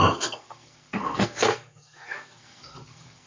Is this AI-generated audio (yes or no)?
yes